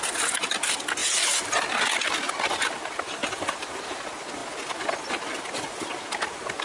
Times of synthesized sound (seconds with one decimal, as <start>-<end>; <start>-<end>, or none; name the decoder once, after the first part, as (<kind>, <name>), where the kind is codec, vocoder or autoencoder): 1.0-1.6 (vocoder, BigVGAN v2); 3.2-3.9